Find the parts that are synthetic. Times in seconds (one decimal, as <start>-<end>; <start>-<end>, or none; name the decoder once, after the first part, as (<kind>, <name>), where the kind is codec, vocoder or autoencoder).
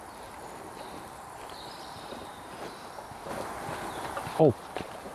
0.0-3.3 (vocoder, BigVGAN v2); 4.4-5.1